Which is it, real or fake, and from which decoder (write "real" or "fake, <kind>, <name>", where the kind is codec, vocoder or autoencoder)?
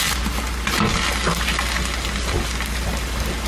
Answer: real